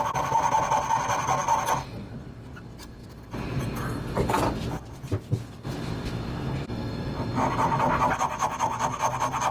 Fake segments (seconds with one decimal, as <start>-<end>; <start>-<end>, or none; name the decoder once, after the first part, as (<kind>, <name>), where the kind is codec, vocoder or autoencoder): none